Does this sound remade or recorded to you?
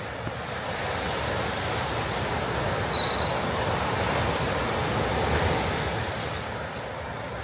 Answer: recorded